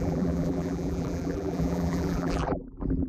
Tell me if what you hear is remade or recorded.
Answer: remade